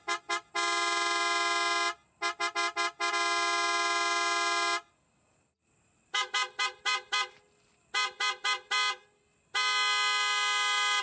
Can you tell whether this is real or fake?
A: real